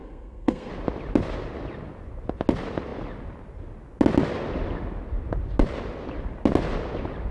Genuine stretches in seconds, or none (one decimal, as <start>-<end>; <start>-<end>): 0.7-7.3